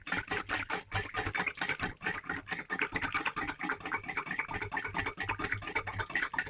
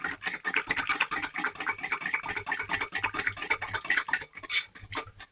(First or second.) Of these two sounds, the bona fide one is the second